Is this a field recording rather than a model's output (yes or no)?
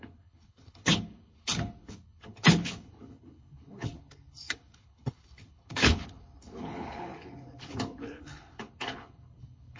no